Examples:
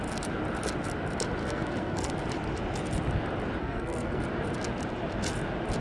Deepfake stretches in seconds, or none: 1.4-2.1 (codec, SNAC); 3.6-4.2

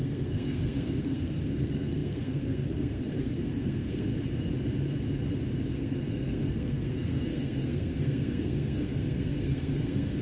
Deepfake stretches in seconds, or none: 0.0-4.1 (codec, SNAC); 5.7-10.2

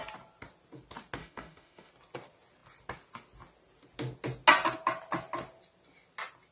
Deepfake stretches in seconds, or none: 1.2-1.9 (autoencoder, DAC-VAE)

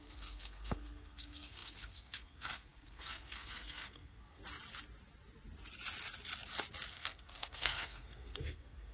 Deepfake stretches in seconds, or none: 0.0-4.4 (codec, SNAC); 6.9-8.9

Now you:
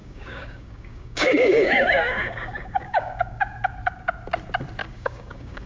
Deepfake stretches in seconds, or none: 0.0-3.4 (codec, DAC); 4.8-5.7

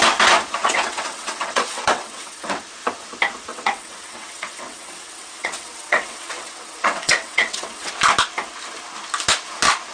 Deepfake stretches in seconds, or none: 0.6-2.6 (vocoder, WaveNeXt); 3.5-7.9